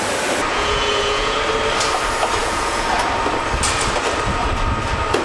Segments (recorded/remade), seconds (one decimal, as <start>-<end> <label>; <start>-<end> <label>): 0.0-0.5 recorded; 0.5-1.4 remade; 1.4-2.4 recorded; 2.4-2.9 remade; 2.9-5.2 recorded